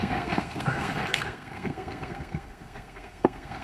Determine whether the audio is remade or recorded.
remade